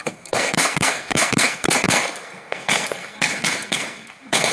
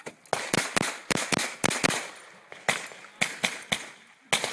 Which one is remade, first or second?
first